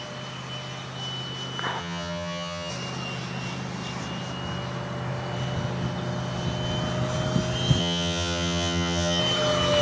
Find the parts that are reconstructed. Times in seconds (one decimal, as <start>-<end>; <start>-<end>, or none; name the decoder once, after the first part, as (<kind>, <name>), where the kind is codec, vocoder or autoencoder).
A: 1.8-2.7 (vocoder, HiFi-GAN); 7.8-9.2